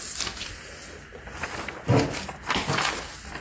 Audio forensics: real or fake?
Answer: real